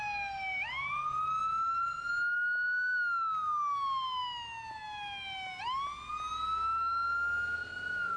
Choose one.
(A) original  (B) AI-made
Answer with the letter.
A